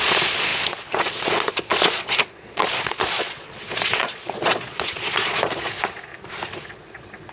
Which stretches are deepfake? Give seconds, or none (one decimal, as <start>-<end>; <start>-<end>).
0.0-6.1; 6.6-7.3